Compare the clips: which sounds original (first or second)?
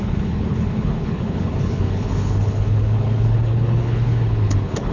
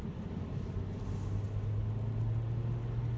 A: second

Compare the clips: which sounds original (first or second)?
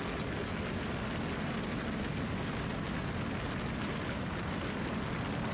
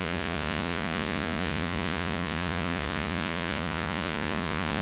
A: first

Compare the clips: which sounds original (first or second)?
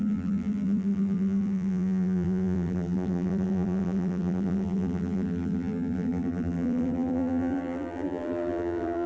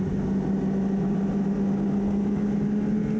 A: second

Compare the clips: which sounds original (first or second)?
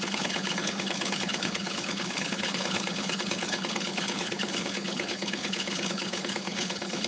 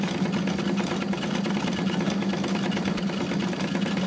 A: second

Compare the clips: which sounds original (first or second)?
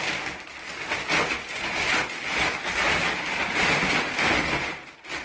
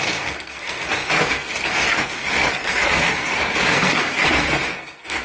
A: first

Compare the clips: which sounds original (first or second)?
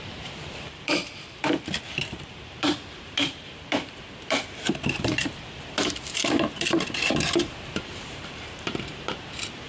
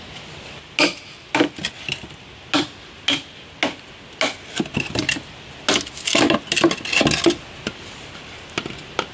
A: second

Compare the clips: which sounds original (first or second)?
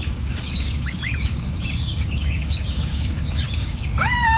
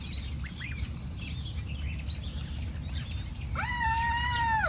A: second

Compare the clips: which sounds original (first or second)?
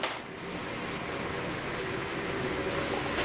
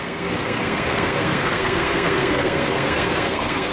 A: first